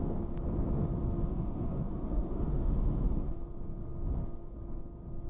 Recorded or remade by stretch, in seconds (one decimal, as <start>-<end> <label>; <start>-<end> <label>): 0.0-1.3 recorded; 1.3-3.3 remade; 3.3-5.3 recorded